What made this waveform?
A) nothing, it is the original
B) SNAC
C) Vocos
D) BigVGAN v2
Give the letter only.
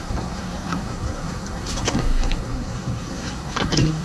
B